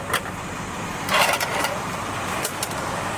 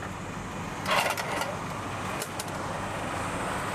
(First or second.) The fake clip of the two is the first